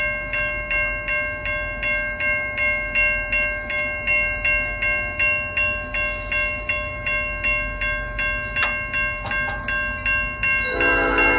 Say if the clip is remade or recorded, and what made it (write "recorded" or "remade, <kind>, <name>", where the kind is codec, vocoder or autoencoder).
recorded